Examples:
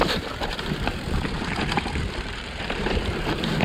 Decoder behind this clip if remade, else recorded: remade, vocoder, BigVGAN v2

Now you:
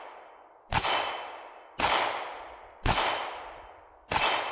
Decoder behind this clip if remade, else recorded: recorded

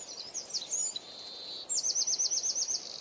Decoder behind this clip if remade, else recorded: recorded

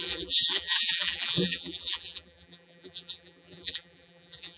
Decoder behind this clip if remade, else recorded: remade, vocoder, BigVGAN v2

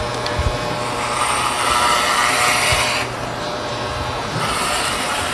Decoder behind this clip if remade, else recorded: remade, vocoder, BigVGAN v2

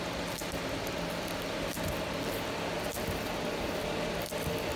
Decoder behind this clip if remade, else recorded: recorded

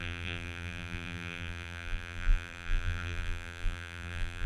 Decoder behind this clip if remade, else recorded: remade, vocoder, BigVGAN v2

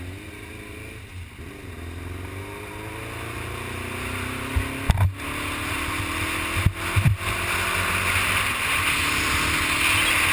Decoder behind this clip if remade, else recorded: recorded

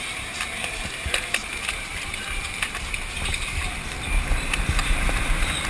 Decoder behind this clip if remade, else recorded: remade, vocoder, BigVGAN v2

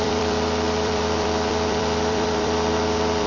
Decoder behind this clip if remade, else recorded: remade, vocoder, BigVGAN v2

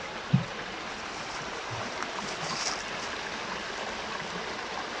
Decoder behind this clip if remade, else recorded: recorded